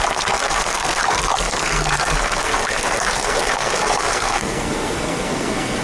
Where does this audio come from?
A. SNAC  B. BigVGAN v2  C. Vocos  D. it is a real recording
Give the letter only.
A